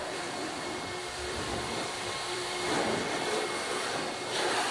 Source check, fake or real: fake